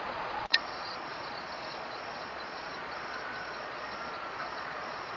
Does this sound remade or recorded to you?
remade